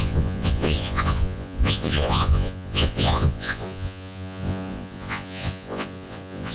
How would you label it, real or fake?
fake